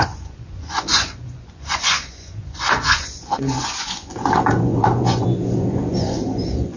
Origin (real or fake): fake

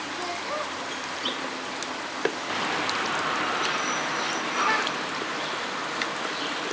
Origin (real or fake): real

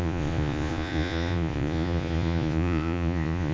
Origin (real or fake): fake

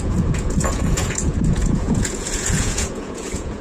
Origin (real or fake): fake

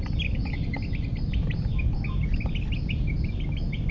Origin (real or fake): real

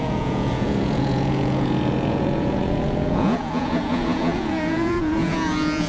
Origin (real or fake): fake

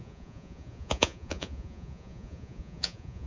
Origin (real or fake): fake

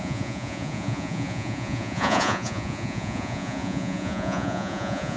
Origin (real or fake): fake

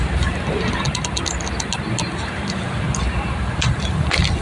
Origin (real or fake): real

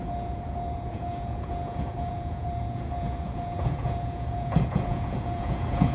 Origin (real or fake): fake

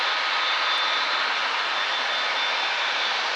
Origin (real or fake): real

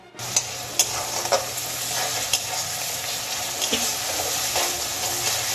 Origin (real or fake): real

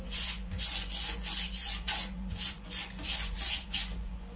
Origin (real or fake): fake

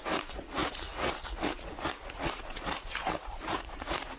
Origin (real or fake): fake